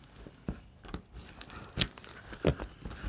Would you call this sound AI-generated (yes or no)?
no